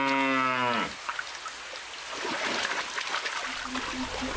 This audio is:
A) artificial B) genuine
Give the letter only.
B